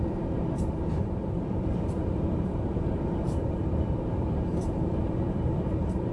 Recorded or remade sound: remade